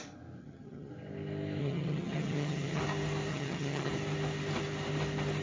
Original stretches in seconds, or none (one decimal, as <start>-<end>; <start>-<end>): 0.0-0.4; 0.9-1.6; 2.8-3.3; 3.9-5.4